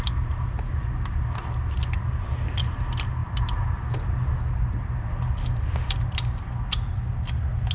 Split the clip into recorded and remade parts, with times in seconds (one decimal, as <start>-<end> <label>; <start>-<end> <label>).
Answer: 0.0-5.4 recorded; 5.4-5.9 remade; 5.9-7.7 recorded